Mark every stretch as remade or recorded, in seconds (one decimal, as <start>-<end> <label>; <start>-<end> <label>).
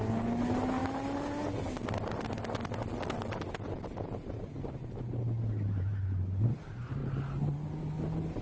0.0-8.4 recorded